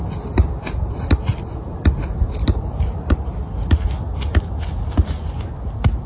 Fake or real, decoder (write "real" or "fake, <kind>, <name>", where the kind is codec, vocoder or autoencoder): real